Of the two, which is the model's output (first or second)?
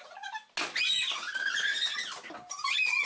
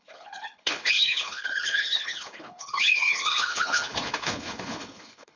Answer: second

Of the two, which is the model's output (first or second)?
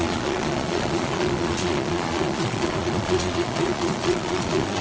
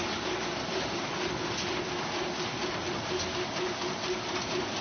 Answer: first